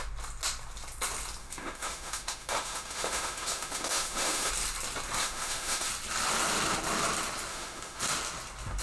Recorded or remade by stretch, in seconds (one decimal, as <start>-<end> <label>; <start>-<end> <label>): 0.0-1.4 recorded; 1.4-4.5 remade; 4.5-5.2 recorded; 5.2-5.9 remade; 5.9-7.5 recorded; 7.5-8.0 remade; 8.0-8.8 recorded